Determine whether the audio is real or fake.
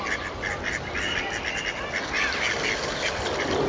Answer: real